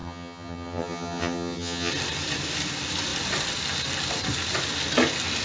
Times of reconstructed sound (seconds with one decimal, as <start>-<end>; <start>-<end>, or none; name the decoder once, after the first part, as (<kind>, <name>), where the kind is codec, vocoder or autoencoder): 0.0-1.9 (vocoder, HiFi-GAN)